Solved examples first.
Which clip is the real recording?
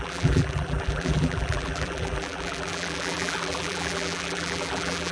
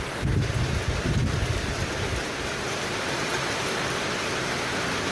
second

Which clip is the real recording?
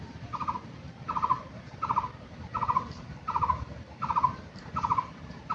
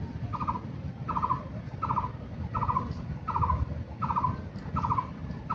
second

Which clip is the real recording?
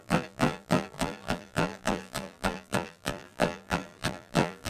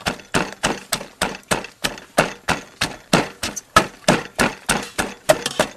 second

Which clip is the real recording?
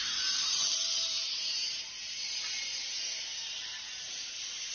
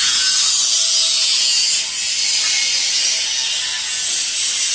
second